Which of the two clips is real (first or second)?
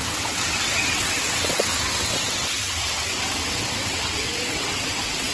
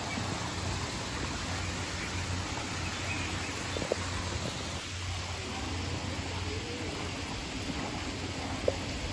second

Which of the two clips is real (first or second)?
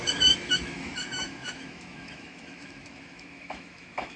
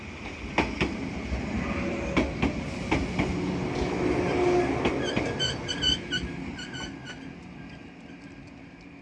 second